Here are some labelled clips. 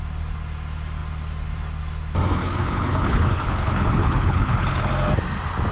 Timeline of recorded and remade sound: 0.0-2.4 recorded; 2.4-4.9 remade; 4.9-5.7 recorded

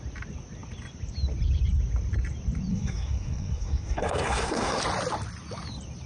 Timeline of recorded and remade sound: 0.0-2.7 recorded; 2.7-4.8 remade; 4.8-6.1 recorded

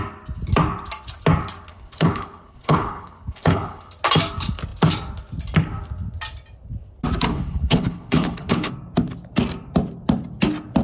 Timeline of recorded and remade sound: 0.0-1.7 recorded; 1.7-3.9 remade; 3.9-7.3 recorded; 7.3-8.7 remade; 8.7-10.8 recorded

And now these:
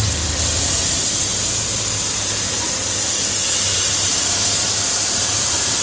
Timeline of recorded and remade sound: 0.0-1.3 remade; 1.3-3.6 recorded; 3.6-5.8 remade